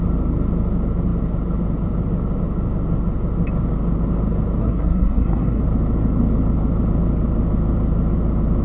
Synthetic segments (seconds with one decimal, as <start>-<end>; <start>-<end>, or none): 4.6-5.6